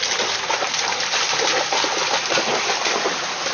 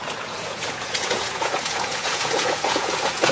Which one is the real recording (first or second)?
first